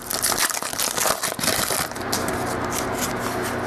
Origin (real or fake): real